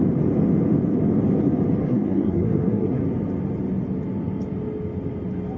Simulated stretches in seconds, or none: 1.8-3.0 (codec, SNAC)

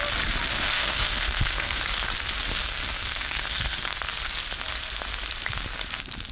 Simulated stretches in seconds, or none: 0.5-1.8 (codec, SNAC); 2.5-4.0

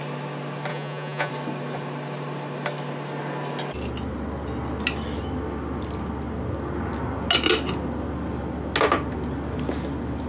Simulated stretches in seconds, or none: 0.7-1.3 (vocoder, Vocos)

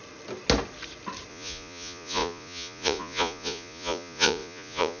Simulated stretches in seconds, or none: 1.3-5.0 (vocoder, Vocos)

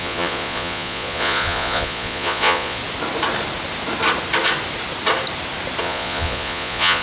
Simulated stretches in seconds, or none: 0.0-2.8 (vocoder, Vocos); 5.8-7.0

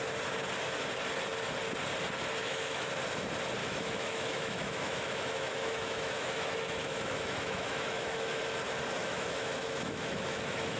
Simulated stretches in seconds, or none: 2.4-2.9 (autoencoder, DAC-VAE); 3.6-8.4; 9.0-10.8

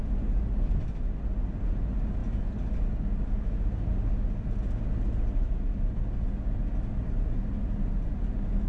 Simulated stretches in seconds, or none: none

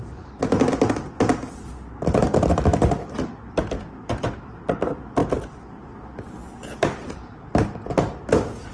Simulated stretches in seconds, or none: none